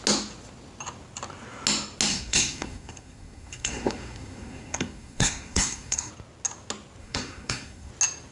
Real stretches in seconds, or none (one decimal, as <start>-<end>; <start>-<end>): 0.0-2.1; 6.1-7.0; 7.9-8.3